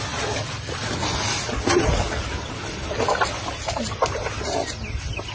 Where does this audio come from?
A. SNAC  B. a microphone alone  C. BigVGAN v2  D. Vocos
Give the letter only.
B